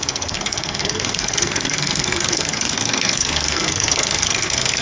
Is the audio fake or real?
fake